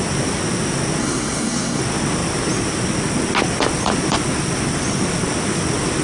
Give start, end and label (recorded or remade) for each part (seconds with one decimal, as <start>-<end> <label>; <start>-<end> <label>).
0.0-1.0 recorded; 1.0-1.8 remade; 1.8-6.0 recorded